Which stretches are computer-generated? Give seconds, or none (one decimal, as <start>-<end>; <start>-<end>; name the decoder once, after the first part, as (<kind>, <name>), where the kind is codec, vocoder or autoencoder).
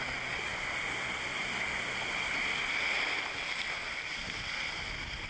none